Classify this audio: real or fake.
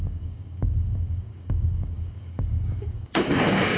fake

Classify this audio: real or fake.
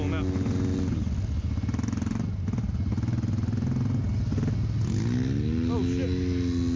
real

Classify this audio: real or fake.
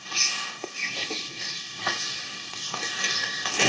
fake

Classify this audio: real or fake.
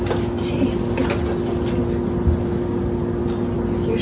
real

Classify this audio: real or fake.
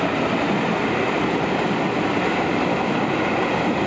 real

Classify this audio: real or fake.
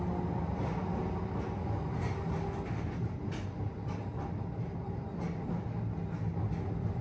real